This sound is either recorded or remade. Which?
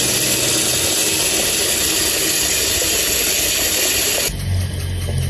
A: recorded